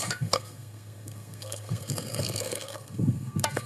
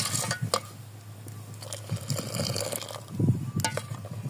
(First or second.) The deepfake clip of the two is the first